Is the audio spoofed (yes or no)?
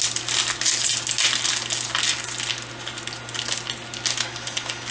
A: no